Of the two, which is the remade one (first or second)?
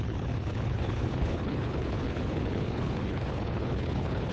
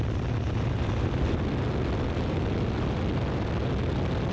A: first